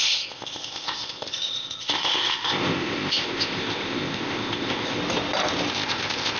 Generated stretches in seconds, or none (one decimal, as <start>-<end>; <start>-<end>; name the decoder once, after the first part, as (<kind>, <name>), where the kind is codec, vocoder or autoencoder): 0.0-5.0 (codec, ZipCodec); 5.7-6.4